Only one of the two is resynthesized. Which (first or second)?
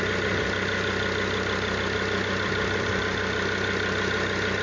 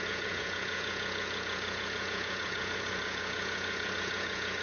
second